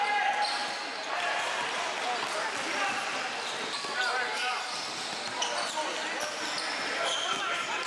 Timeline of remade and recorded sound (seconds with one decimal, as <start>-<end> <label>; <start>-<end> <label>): 0.0-7.9 recorded